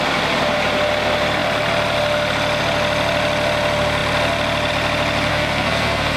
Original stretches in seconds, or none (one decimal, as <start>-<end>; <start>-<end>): 0.0-5.3